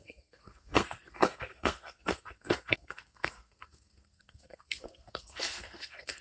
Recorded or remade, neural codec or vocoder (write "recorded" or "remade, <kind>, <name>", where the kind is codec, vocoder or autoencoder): remade, codec, SNAC